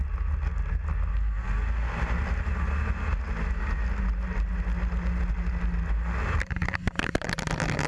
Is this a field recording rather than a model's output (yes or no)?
yes